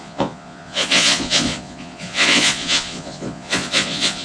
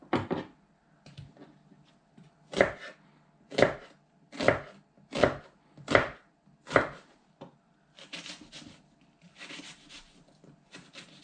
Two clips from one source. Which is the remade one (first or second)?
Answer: first